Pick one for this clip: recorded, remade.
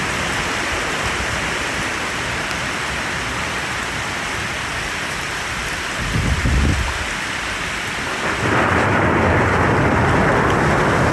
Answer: recorded